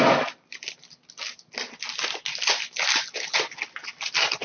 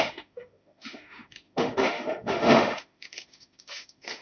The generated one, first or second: second